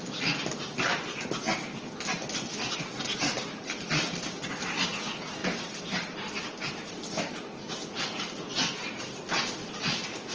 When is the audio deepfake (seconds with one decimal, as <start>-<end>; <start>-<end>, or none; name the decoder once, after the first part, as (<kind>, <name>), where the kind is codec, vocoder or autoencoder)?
5.4-6.7 (vocoder, BigVGAN v2)